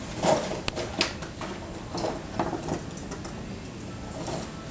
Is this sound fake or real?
real